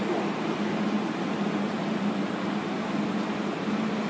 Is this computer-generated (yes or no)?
no